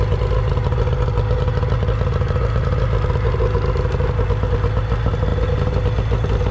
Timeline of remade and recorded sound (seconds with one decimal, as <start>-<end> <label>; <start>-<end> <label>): 0.0-6.5 recorded